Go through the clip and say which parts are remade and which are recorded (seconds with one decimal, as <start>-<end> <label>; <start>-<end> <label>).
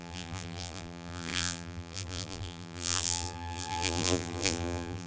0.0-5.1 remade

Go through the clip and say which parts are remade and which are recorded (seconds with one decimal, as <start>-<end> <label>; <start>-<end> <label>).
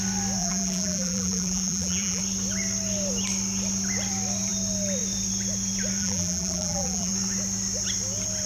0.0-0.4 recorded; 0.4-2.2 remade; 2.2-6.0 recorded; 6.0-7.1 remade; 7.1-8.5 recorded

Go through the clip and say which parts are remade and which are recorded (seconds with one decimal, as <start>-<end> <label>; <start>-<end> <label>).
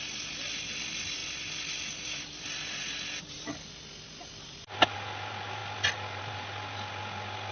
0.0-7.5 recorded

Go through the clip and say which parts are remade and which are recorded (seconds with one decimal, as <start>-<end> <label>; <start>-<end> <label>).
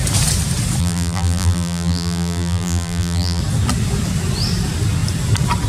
0.0-0.8 recorded; 0.8-3.4 remade; 3.4-5.7 recorded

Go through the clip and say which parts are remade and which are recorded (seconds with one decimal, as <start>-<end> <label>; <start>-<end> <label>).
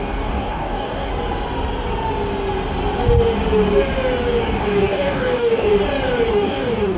0.0-1.1 remade; 1.1-4.4 recorded; 4.4-5.7 remade; 5.7-6.3 recorded; 6.3-7.0 remade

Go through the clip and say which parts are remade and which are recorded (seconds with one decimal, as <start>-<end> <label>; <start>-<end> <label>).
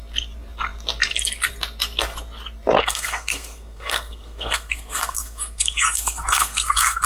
0.0-2.8 recorded; 2.8-7.1 remade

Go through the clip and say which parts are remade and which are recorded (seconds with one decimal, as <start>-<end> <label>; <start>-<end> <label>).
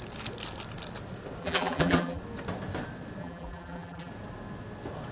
0.0-1.4 recorded; 1.4-2.2 remade; 2.2-3.2 recorded; 3.2-4.1 remade; 4.1-5.1 recorded